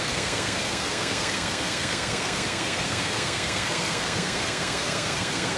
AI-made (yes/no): yes